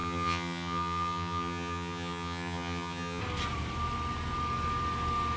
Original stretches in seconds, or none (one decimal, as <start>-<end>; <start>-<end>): 3.2-5.4